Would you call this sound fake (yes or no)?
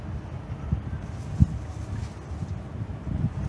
no